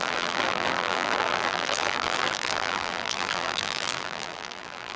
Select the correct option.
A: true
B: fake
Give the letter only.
B